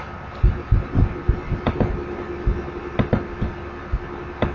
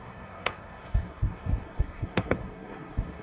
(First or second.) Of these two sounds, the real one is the first